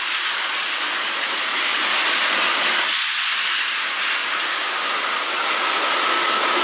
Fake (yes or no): no